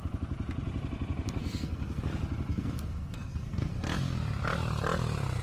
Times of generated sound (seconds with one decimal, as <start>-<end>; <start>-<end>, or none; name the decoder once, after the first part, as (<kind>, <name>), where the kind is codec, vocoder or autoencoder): 1.4-2.0 (codec, SNAC); 2.5-3.8